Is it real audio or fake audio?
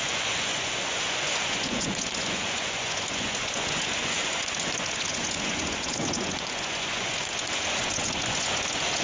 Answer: fake